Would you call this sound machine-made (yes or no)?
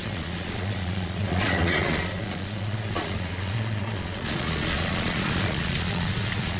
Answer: yes